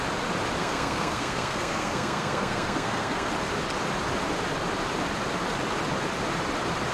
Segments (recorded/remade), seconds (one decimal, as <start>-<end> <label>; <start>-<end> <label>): 0.0-0.6 recorded; 0.6-3.3 remade; 3.3-6.9 recorded